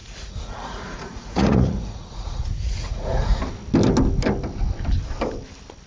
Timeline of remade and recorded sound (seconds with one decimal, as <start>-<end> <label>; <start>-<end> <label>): 0.0-3.4 remade; 3.4-5.9 recorded